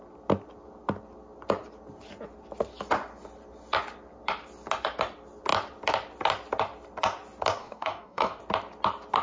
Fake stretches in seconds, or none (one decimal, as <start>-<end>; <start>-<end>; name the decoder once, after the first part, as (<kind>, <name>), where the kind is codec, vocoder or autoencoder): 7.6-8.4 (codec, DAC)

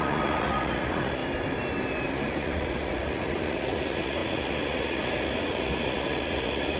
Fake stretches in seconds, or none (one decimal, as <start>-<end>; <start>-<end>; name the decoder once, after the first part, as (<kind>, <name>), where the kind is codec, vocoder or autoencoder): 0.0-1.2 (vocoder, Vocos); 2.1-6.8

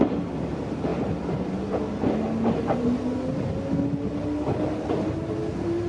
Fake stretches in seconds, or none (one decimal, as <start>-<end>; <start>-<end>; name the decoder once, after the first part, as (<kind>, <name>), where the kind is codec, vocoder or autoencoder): none